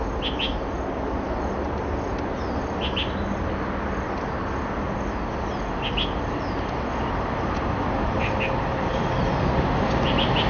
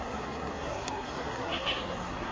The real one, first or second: first